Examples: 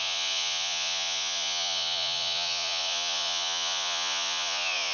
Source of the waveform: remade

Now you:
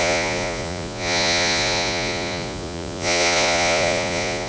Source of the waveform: remade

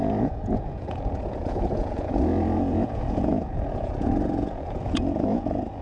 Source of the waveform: remade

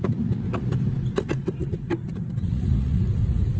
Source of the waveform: remade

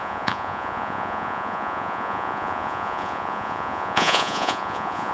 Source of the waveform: remade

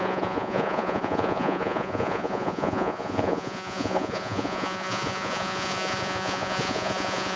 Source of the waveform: remade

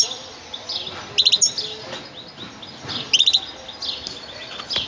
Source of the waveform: recorded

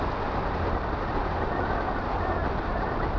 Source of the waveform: recorded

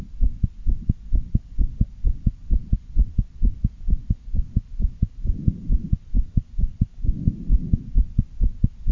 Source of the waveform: recorded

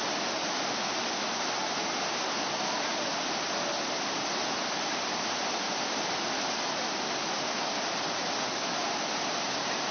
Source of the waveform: recorded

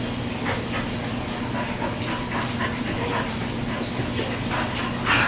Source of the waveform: recorded